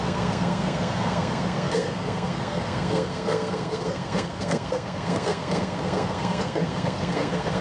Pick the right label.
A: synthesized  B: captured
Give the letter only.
A